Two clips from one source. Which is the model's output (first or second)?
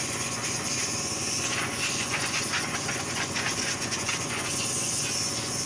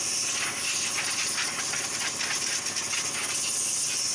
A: first